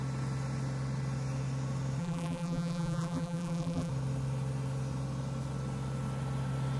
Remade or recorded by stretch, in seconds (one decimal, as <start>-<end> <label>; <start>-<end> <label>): 0.0-2.0 recorded; 2.0-3.9 remade; 3.9-6.8 recorded